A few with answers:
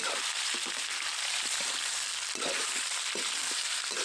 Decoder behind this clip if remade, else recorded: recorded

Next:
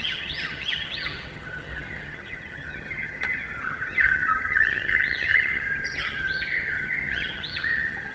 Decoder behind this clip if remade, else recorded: remade, vocoder, HiFi-GAN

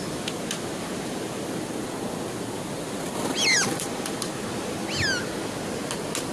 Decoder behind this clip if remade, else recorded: recorded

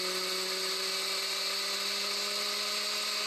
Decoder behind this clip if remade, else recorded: recorded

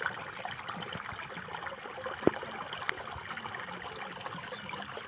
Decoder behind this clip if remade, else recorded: recorded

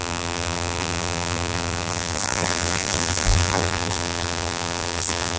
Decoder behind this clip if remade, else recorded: remade, vocoder, BigVGAN v2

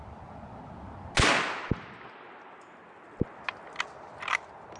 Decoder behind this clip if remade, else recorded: recorded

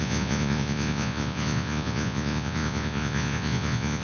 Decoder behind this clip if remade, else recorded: remade, vocoder, Vocos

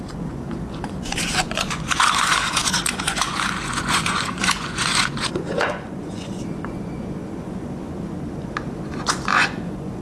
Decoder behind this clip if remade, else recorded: remade, vocoder, Vocos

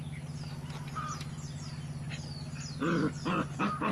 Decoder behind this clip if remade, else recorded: recorded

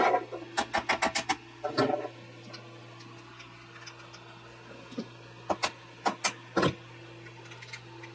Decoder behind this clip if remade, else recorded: recorded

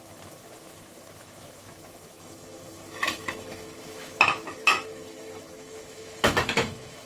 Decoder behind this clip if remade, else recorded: remade, autoencoder, DAC-VAE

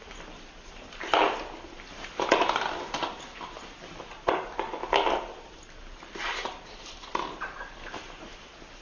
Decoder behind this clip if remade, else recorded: recorded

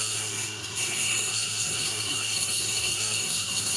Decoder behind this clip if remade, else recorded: remade, codec, SNAC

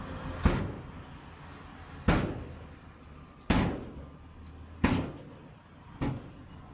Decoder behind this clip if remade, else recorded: recorded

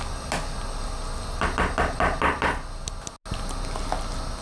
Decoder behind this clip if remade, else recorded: recorded